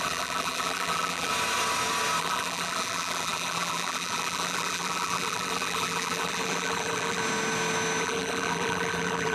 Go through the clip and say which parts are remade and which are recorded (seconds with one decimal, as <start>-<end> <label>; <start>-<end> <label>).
0.0-1.3 remade; 1.3-2.2 recorded; 2.2-7.2 remade; 7.2-8.0 recorded; 8.0-9.3 remade